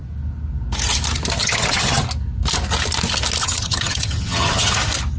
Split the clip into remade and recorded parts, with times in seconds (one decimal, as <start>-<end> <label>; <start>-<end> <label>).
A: 0.0-1.4 recorded; 1.4-2.1 remade; 2.1-3.4 recorded; 3.4-4.8 remade; 4.8-5.2 recorded